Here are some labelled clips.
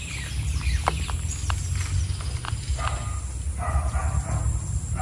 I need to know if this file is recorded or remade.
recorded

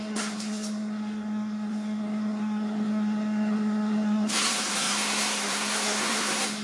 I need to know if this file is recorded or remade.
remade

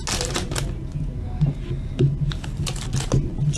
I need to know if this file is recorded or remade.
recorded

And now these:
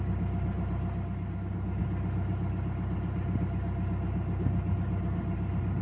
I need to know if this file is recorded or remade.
recorded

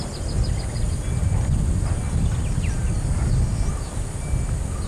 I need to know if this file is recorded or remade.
recorded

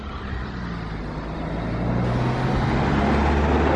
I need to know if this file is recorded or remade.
recorded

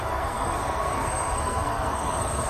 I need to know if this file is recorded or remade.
remade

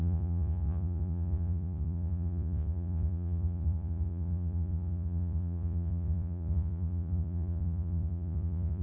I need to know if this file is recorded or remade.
remade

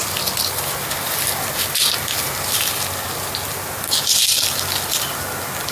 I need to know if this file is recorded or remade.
recorded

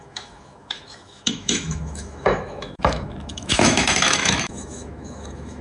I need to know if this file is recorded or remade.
remade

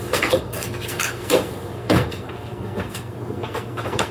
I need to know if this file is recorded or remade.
remade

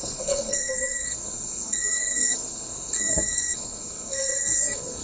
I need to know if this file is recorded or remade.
remade